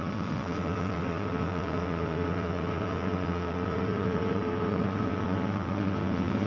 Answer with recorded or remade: remade